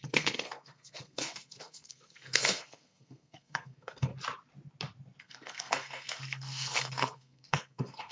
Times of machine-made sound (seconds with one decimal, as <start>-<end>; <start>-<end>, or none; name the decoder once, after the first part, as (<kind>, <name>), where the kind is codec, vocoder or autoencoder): 0.0-4.1 (codec, SNAC); 5.2-8.1